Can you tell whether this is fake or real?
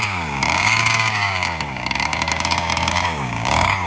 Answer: fake